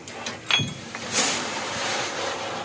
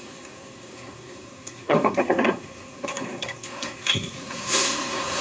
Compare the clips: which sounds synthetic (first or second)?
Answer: second